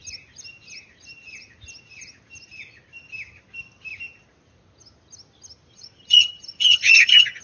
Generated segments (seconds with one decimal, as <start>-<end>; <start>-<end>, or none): 5.7-7.4